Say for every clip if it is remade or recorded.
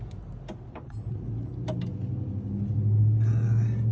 recorded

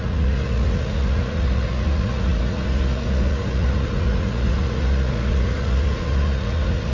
remade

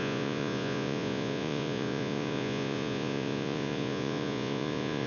remade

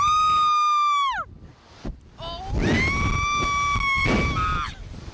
recorded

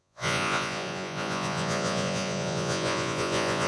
remade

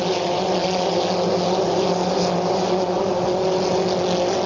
recorded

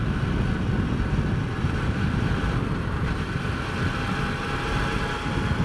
recorded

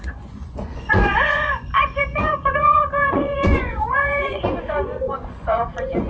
remade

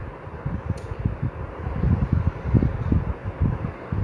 recorded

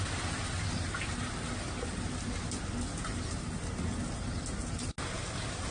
recorded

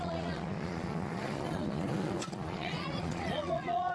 remade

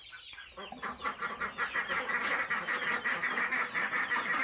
recorded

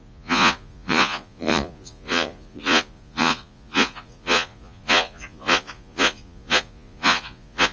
remade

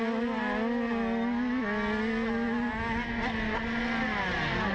recorded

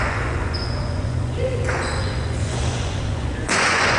remade